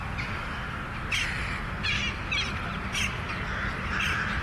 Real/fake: real